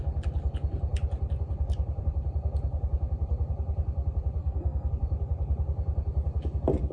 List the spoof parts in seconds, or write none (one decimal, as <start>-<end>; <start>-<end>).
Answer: 4.4-4.9